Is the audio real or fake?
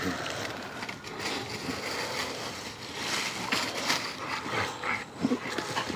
real